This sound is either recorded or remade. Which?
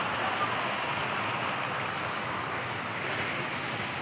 recorded